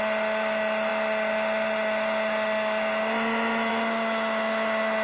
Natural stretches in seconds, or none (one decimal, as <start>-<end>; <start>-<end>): 0.0-5.0